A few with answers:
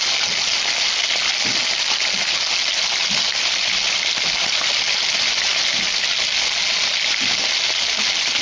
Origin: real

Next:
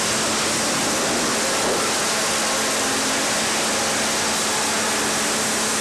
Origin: real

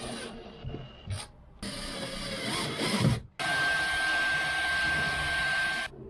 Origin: real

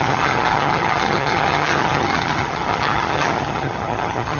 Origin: fake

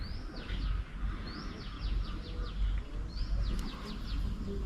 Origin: real